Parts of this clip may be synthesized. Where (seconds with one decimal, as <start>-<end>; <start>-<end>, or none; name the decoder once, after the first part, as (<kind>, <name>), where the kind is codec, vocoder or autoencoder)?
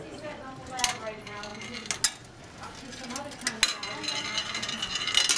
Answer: none